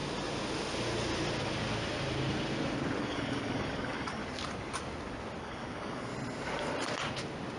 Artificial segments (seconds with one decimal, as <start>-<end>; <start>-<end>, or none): 3.0-4.2; 5.4-6.1